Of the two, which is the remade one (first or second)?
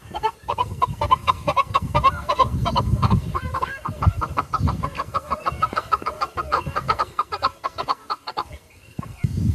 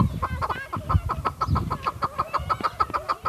first